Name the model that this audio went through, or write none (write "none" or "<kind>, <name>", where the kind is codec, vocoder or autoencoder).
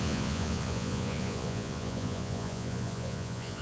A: vocoder, Vocos